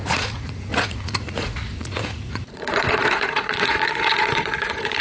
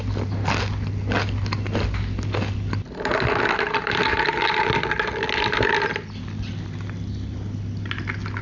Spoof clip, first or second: first